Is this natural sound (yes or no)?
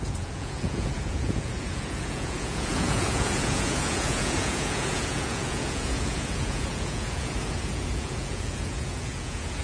no